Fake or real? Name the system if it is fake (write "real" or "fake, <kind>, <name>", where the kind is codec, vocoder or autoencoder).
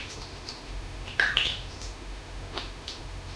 fake, autoencoder, DAC-VAE